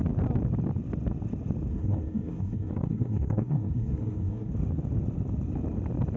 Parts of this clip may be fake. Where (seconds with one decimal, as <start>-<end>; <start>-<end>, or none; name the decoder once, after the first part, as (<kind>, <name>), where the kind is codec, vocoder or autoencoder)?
1.7-4.5 (codec, SNAC)